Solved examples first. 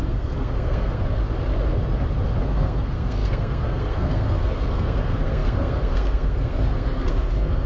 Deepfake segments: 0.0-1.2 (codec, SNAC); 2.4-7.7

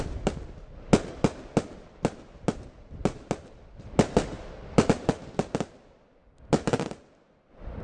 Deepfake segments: none

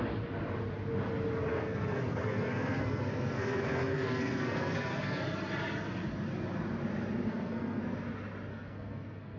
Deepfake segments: 1.5-5.2 (codec, SNAC); 7.3-7.8; 8.5-9.4

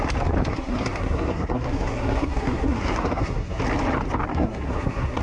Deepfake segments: 0.5-3.6 (codec, SNAC); 4.3-5.2

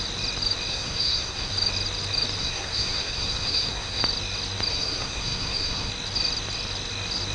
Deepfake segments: 0.7-1.5 (codec, SNAC); 2.4-4.0; 4.7-5.9

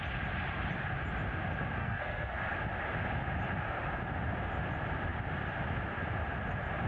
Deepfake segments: 1.8-2.5 (codec, SNAC)